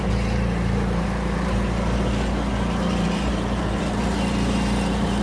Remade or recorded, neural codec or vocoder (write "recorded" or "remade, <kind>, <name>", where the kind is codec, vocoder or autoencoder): remade, vocoder, BigVGAN v2